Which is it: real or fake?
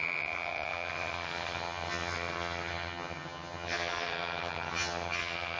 fake